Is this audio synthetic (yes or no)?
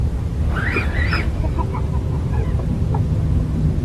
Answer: no